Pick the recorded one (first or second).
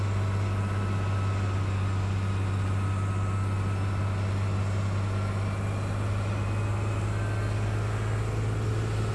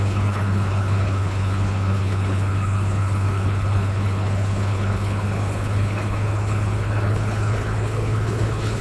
first